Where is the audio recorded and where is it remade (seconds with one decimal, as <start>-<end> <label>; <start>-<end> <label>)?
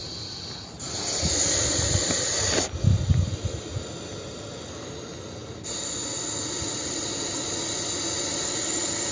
0.0-9.1 recorded